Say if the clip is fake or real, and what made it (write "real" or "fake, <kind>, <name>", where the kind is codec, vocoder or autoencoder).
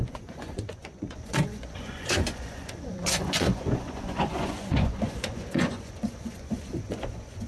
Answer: fake, vocoder, Vocos